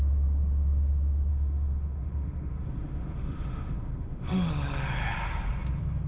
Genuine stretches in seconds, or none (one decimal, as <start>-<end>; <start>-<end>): 0.0-1.3; 4.5-6.1